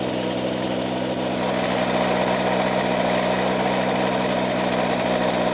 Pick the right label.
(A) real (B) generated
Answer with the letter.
A